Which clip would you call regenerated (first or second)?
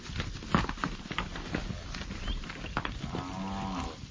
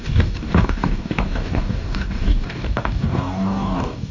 second